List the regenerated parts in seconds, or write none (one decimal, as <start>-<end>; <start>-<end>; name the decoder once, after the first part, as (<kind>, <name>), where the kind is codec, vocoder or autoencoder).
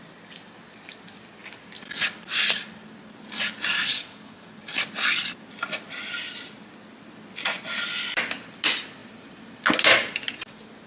3.9-4.5 (codec, DAC)